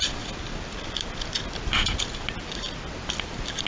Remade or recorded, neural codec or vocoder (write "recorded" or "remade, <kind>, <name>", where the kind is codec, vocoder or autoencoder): recorded